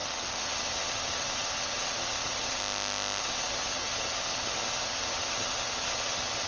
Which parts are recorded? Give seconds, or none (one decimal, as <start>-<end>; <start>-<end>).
2.6-3.2